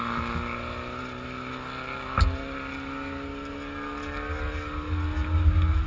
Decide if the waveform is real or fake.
real